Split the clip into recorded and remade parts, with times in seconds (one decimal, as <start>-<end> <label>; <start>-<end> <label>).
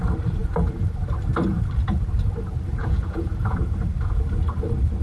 0.0-2.8 recorded; 2.8-3.6 remade; 3.6-5.0 recorded